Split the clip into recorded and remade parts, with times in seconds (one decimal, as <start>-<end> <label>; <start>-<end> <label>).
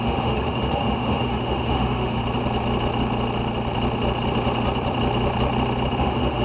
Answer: 0.0-2.2 remade; 2.2-6.0 recorded; 6.0-6.4 remade